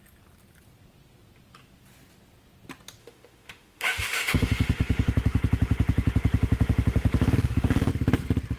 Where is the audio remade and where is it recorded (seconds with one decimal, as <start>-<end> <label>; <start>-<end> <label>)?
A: 0.0-3.0 recorded; 3.0-7.9 remade; 7.9-8.6 recorded